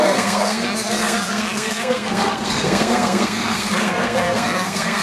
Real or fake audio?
fake